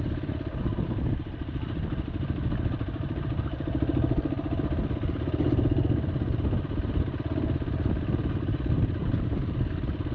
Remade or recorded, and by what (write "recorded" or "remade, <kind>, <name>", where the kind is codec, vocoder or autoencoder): recorded